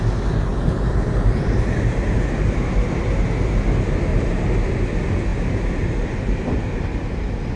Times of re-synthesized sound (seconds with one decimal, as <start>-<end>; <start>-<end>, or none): 0.5-3.0; 4.1-4.7; 5.3-6.8